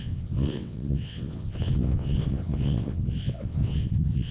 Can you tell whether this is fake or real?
fake